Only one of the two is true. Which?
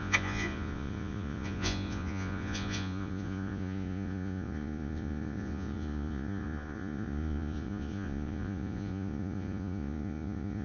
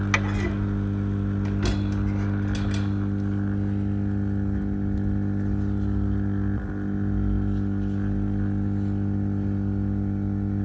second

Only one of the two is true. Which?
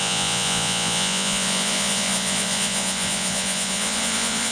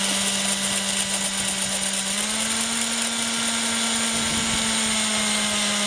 second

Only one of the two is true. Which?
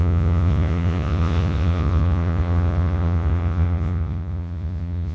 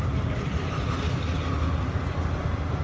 second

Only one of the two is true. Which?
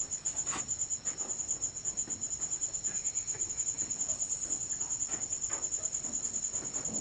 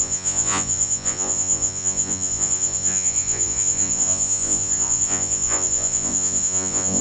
first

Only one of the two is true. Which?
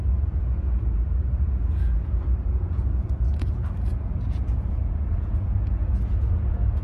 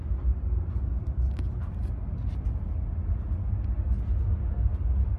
second